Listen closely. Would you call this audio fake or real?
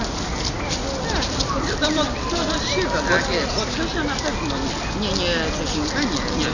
real